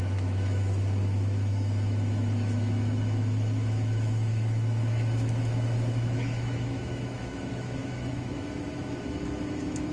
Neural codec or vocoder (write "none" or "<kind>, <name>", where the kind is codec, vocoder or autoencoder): autoencoder, DAC-VAE